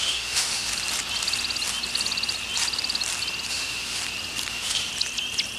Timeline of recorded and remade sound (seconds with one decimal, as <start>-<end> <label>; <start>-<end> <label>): 0.0-0.7 remade; 0.7-3.5 recorded; 3.5-4.0 remade; 4.0-4.5 recorded; 4.5-4.9 remade; 4.9-5.6 recorded